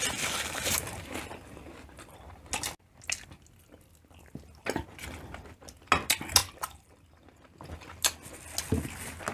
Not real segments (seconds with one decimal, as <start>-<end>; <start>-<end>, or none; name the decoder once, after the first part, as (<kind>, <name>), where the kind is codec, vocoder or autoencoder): none